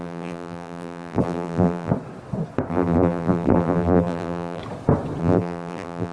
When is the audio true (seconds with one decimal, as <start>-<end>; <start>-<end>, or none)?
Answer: 1.9-2.7; 4.6-5.2